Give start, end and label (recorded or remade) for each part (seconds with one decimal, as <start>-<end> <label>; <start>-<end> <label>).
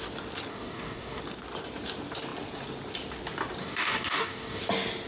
0.0-0.5 recorded; 0.5-1.2 remade; 1.2-3.6 recorded; 3.6-4.6 remade; 4.6-5.1 recorded